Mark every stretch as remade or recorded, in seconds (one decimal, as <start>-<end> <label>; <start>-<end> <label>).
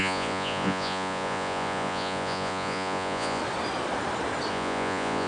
0.0-3.4 remade; 3.4-4.5 recorded; 4.5-5.3 remade